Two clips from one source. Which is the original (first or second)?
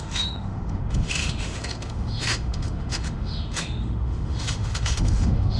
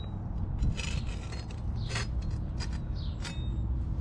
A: second